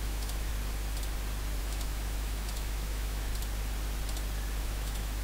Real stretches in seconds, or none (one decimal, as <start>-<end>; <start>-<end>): 0.5-1.6; 3.3-4.6